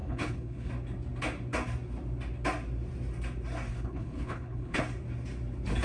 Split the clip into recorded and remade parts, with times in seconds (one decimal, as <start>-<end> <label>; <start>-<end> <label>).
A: 0.0-0.7 remade; 0.7-3.7 recorded; 3.7-4.8 remade; 4.8-5.8 recorded